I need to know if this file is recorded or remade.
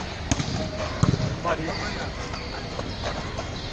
recorded